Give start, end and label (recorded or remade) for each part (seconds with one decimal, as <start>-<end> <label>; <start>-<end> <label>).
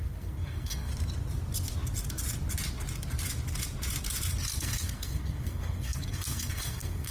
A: 0.0-0.9 remade; 0.9-4.6 recorded; 4.6-7.1 remade